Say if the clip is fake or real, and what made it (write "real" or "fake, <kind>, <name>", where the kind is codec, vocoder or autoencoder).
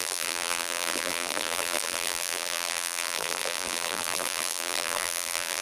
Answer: fake, vocoder, BigVGAN v2